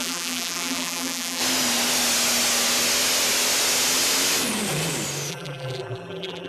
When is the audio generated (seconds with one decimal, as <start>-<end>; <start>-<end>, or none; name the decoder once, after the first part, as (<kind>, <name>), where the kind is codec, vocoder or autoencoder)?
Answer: 0.0-1.4 (vocoder, BigVGAN v2); 5.3-6.5